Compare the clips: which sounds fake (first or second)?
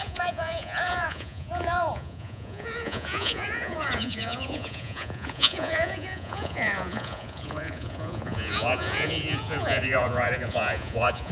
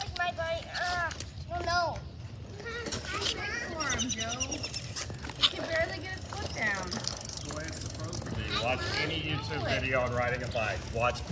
first